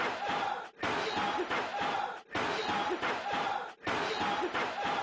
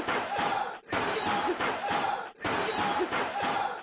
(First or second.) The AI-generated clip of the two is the second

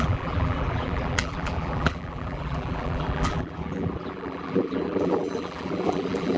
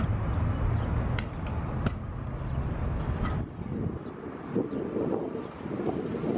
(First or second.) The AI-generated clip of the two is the first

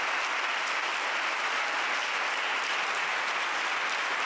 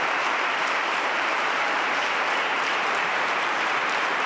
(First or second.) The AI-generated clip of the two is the second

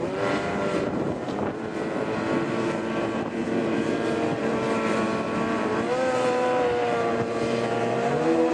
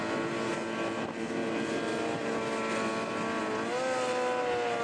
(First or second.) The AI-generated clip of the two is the first